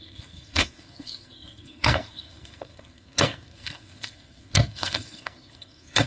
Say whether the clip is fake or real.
fake